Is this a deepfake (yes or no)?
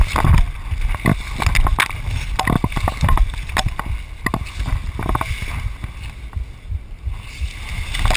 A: no